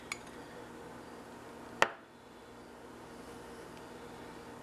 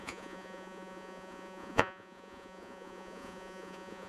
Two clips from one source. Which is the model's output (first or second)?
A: second